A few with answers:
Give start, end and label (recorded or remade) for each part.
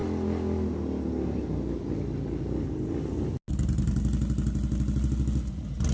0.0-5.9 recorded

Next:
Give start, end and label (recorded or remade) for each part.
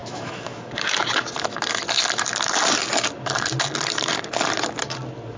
0.0-0.7 remade; 0.7-5.4 recorded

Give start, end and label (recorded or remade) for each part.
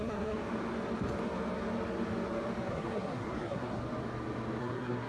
0.0-0.4 remade; 0.4-2.7 recorded; 2.7-3.8 remade; 3.8-4.6 recorded; 4.6-5.1 remade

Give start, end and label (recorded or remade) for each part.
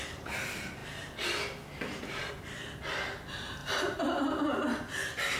0.0-3.6 recorded; 3.6-4.6 remade; 4.6-5.4 recorded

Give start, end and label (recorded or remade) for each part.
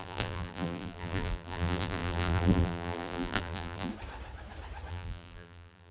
0.0-3.9 remade; 3.9-4.9 recorded; 4.9-5.9 remade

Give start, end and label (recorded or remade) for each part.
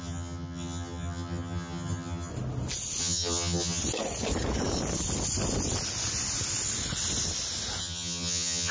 0.0-2.3 remade; 2.3-3.0 recorded; 3.0-3.8 remade; 3.8-7.8 recorded; 7.8-8.7 remade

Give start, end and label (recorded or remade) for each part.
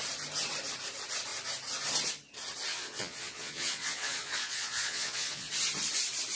0.0-2.7 recorded; 2.7-5.5 remade; 5.5-6.3 recorded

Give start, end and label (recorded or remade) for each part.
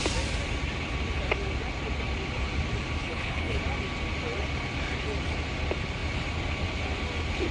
0.0-3.0 recorded; 3.0-3.6 remade; 3.6-7.5 recorded